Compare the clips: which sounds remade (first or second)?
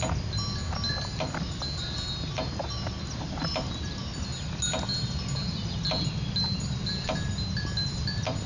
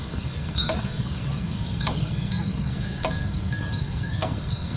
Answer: second